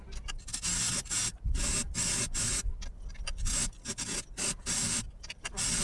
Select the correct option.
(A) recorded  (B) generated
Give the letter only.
A